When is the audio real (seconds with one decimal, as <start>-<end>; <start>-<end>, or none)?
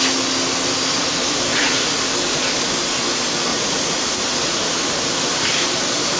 0.0-1.5; 2.0-3.5; 5.1-6.2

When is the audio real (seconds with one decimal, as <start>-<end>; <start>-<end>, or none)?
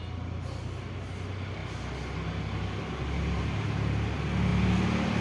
0.0-5.2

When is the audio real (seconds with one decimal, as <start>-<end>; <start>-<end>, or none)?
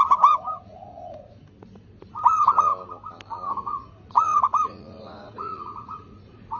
1.4-2.3; 2.7-3.5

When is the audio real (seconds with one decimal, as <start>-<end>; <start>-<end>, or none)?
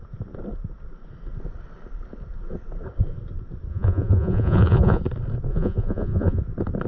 0.0-3.7; 5.0-5.5; 6.4-6.9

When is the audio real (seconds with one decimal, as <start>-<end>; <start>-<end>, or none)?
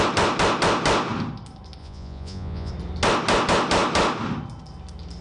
0.0-1.8; 2.7-5.2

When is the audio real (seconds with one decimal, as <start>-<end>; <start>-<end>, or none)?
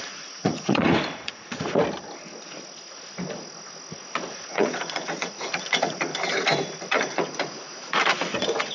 1.8-4.3; 6.1-6.9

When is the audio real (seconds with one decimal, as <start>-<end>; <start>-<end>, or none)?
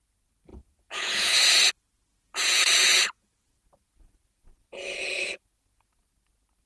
0.0-0.5; 1.7-2.1; 6.1-6.7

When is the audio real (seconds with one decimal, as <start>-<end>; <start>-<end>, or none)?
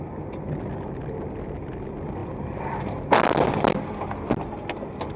0.0-5.2